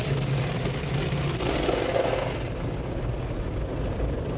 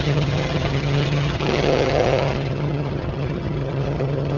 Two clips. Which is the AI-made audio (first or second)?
second